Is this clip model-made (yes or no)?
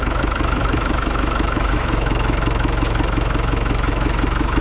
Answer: yes